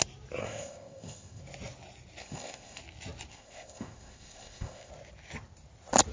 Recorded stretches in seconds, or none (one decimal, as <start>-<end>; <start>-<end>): 0.0-0.4; 1.4-2.2; 2.8-3.3; 4.9-6.1